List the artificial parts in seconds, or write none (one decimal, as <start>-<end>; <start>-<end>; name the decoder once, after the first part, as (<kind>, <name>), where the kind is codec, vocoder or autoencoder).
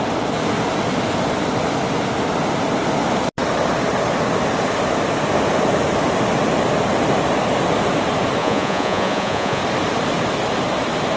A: 8.4-9.6 (vocoder, Vocos)